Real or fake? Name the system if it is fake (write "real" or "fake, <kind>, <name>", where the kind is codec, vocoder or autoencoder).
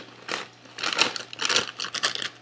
real